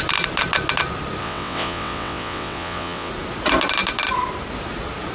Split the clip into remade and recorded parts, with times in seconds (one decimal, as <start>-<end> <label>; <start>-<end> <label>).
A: 0.0-1.2 recorded; 1.2-3.1 remade; 3.1-5.1 recorded